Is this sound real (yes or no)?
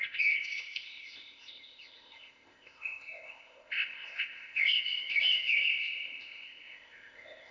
no